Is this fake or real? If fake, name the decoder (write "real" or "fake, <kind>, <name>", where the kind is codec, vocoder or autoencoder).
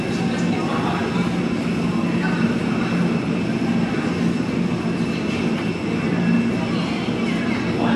real